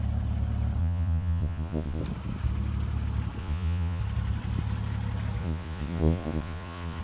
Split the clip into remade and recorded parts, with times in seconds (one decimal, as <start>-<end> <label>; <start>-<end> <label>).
0.0-0.8 recorded; 0.8-2.0 remade; 2.0-3.4 recorded; 3.4-4.0 remade; 4.0-5.4 recorded; 5.4-7.0 remade